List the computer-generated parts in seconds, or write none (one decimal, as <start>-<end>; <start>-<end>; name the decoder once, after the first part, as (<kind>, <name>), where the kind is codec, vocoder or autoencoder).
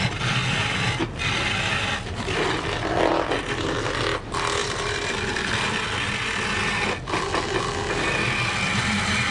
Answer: 4.6-5.5 (vocoder, BigVGAN v2)